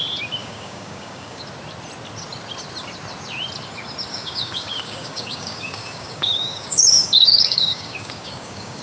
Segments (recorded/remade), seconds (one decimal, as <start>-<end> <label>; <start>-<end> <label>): 0.0-0.4 recorded; 0.4-1.4 remade; 1.4-4.1 recorded; 4.1-8.8 remade